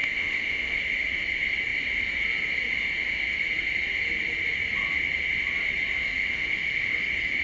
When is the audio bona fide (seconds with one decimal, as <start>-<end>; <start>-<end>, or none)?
0.8-6.0; 6.9-7.4